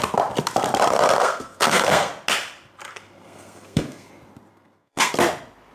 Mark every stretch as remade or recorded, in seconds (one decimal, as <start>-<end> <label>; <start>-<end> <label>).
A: 0.0-1.2 recorded; 1.2-2.1 remade; 2.1-2.9 recorded; 2.9-4.1 remade; 4.1-4.5 recorded; 4.5-5.1 remade; 5.1-5.7 recorded